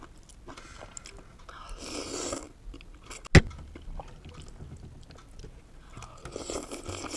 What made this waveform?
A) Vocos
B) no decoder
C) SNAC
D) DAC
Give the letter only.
B